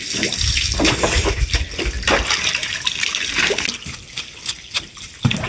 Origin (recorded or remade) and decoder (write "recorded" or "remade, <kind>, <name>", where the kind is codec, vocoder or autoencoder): recorded